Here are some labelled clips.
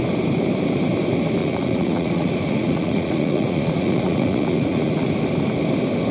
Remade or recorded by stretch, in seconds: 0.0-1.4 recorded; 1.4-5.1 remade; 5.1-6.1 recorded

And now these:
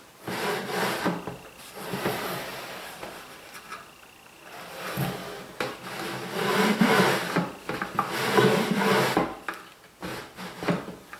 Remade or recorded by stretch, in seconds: 0.0-11.2 recorded

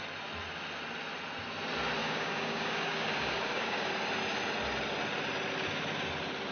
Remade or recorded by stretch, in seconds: 0.0-2.0 recorded; 2.0-3.9 remade; 3.9-6.5 recorded

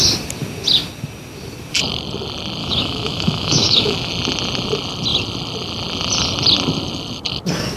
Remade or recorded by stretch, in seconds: 0.0-2.6 recorded; 2.6-4.1 remade; 4.1-7.8 recorded

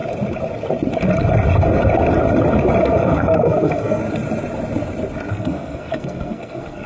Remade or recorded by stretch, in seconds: 0.0-2.8 recorded; 2.8-4.0 remade; 4.0-5.3 recorded; 5.3-6.9 remade

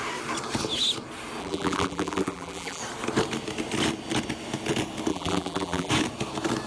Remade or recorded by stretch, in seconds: 0.0-1.4 recorded; 1.4-2.8 remade; 2.8-5.1 recorded; 5.1-5.9 remade; 5.9-6.7 recorded

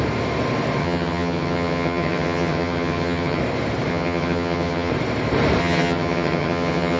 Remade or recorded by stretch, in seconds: 0.0-0.8 recorded; 0.8-3.4 remade; 3.4-3.9 recorded; 3.9-4.9 remade; 4.9-5.6 recorded; 5.6-7.0 remade

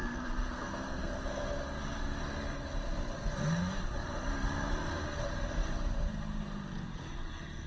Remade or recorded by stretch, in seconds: 0.0-1.1 remade; 1.1-7.7 recorded